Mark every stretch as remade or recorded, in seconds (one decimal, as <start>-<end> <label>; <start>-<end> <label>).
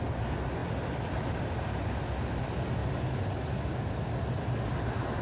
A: 0.0-5.2 recorded